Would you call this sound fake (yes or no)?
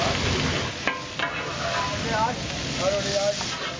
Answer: no